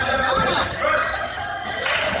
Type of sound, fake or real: fake